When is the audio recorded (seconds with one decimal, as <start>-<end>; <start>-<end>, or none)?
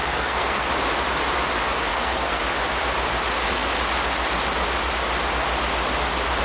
0.7-1.9; 2.4-6.4